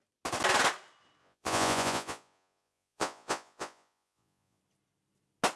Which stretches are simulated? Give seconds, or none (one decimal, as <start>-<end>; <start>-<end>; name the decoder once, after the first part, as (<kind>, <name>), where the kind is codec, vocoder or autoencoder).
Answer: 1.2-4.6 (vocoder, Vocos)